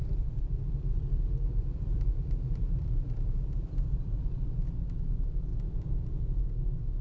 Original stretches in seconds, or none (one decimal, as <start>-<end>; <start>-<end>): 4.2-5.5; 6.4-7.0